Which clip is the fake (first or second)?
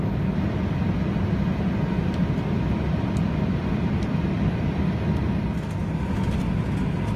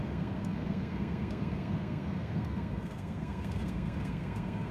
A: second